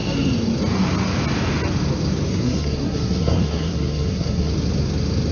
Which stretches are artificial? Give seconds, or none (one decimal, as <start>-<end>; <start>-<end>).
2.3-4.5